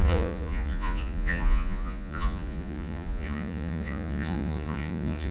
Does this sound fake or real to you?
fake